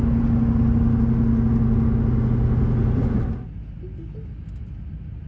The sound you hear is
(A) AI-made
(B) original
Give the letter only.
B